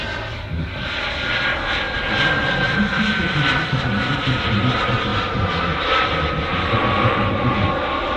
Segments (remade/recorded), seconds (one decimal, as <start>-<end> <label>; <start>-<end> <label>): 0.0-0.7 recorded; 0.7-3.6 remade; 3.6-6.5 recorded; 6.5-7.3 remade; 7.3-8.2 recorded